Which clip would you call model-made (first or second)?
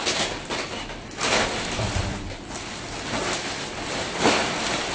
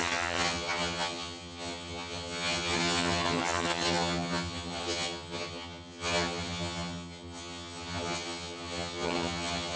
second